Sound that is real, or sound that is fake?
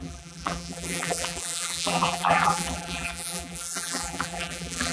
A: fake